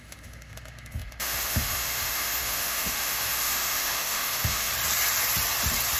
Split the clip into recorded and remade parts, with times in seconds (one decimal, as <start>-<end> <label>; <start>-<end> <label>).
0.0-4.7 remade; 4.7-6.0 recorded